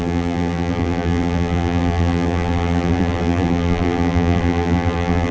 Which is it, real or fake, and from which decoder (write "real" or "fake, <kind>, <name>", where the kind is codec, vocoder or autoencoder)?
fake, vocoder, BigVGAN v2